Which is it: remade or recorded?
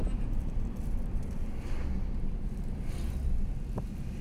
recorded